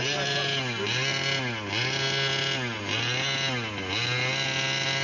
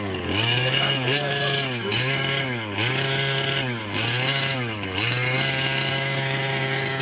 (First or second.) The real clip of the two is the first